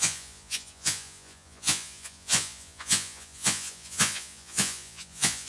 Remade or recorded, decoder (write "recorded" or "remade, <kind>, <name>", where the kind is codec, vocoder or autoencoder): remade, vocoder, Vocos